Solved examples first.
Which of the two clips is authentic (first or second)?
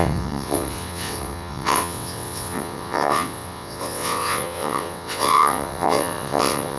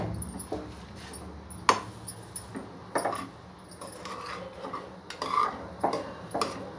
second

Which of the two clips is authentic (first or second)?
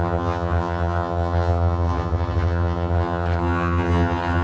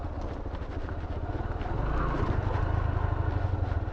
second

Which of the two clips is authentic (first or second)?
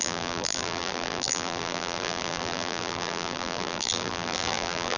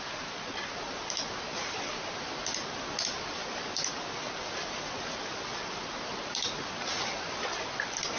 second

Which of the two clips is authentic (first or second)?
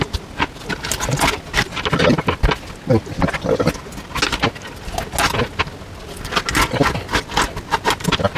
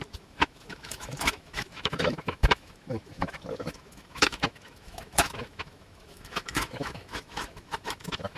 first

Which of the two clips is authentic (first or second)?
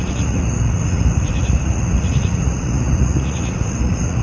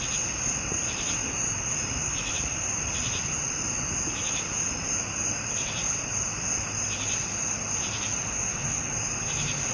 second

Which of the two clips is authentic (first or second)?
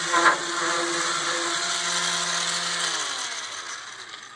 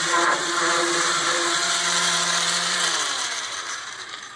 first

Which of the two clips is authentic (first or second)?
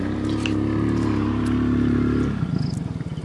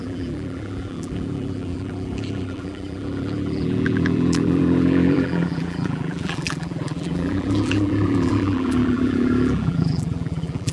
first